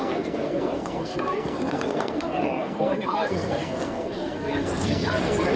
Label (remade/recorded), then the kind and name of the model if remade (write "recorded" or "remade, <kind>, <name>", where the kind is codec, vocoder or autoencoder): remade, codec, SNAC